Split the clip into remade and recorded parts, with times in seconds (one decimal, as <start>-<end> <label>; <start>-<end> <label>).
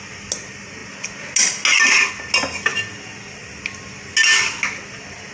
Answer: 0.0-5.3 recorded